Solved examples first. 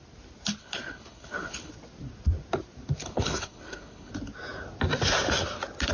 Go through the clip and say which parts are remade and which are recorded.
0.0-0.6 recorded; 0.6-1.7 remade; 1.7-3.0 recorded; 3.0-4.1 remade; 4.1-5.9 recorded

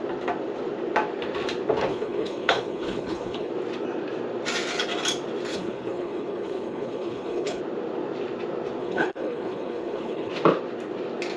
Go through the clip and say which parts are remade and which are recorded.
0.0-1.9 recorded; 1.9-3.5 remade; 3.5-5.5 recorded; 5.5-7.6 remade; 7.6-8.8 recorded; 8.8-10.3 remade; 10.3-11.4 recorded

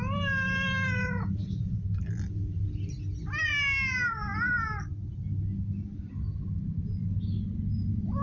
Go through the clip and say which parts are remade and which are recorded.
0.0-8.2 recorded

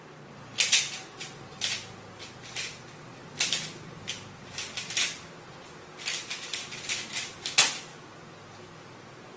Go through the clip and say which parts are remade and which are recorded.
0.0-9.4 recorded

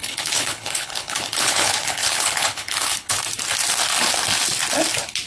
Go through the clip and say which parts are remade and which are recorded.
0.0-3.2 remade; 3.2-5.3 recorded